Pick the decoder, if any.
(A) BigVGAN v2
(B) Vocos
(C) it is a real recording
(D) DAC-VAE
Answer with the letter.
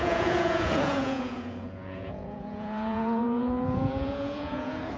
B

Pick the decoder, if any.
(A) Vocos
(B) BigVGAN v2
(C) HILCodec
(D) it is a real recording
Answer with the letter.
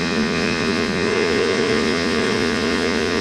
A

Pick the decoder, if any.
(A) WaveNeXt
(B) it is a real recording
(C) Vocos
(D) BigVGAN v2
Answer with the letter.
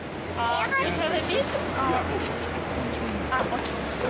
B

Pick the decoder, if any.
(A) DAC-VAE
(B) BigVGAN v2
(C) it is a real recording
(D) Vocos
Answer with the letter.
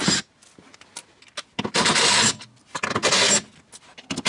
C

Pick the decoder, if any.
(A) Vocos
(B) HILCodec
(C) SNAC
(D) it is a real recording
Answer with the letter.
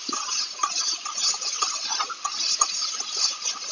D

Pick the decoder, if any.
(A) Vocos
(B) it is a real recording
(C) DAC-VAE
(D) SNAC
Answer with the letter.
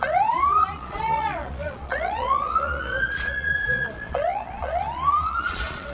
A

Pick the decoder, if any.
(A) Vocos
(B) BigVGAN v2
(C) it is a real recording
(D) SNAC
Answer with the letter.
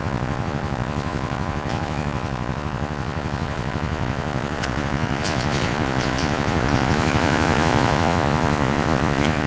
A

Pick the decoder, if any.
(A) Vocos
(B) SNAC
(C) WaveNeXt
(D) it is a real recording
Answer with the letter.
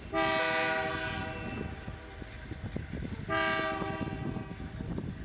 D